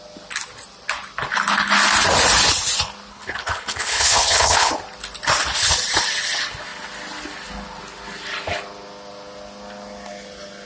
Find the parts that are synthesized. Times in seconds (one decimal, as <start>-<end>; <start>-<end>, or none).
3.1-4.7